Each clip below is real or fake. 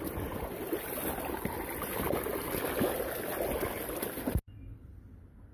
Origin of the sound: real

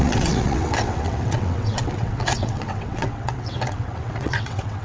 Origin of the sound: fake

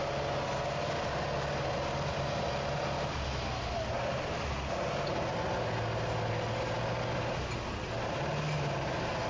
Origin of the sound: real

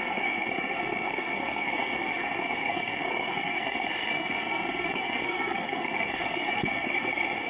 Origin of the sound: fake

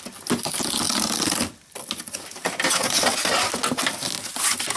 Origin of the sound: real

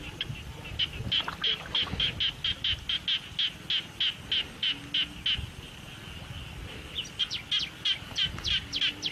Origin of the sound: real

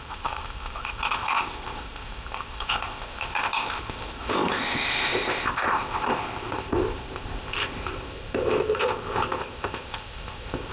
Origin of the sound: fake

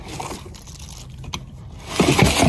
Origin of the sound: real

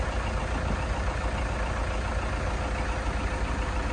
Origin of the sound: real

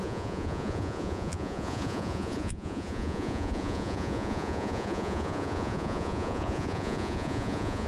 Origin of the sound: fake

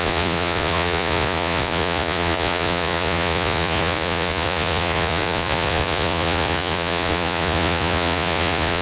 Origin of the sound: fake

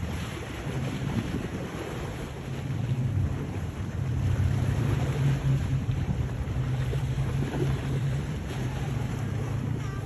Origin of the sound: fake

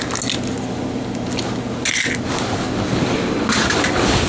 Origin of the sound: real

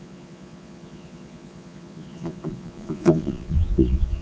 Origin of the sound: fake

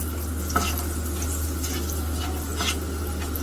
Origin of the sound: real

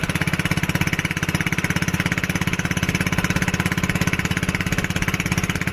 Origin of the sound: real